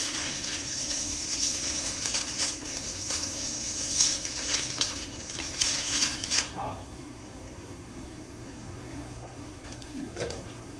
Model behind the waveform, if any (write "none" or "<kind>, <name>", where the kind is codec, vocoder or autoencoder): codec, SNAC